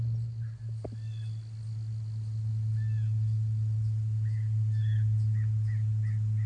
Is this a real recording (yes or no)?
yes